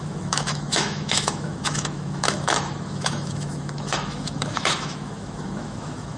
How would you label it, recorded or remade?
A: remade